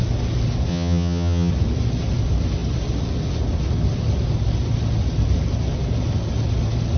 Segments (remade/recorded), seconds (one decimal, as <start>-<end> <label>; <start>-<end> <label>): 0.0-0.7 recorded; 0.7-1.5 remade; 1.5-7.0 recorded